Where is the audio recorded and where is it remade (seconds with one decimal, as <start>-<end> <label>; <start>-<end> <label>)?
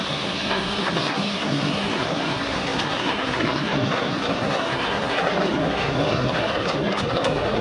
0.0-7.6 remade